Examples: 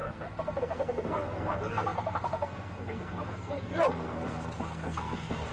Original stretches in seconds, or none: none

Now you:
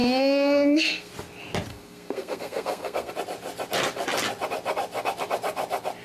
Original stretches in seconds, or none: 1.1-1.7; 3.1-6.0

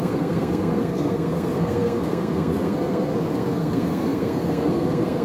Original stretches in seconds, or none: none

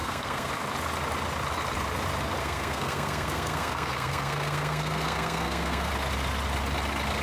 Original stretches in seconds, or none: 0.5-2.4; 5.9-7.2

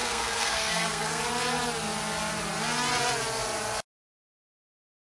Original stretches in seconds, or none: 1.2-5.0

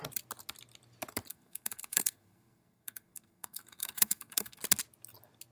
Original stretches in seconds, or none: 0.0-1.3; 4.6-5.5

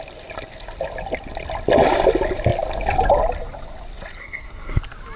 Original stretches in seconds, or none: 0.0-4.2; 4.8-5.2